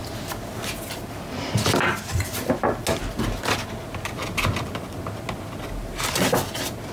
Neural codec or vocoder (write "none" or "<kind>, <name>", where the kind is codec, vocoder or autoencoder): none